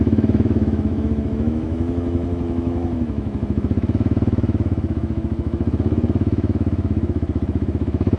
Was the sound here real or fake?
fake